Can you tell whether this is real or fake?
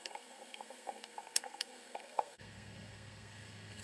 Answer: fake